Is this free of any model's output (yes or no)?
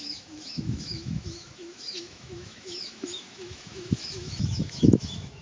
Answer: no